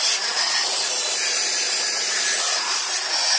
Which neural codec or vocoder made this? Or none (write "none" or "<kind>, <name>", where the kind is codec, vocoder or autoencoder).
vocoder, BigVGAN v2